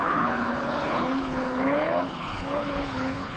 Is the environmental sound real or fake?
fake